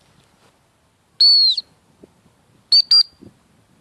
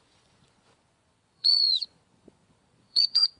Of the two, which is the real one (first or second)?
first